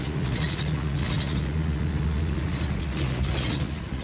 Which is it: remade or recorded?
remade